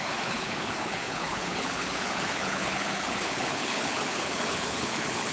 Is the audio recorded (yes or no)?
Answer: no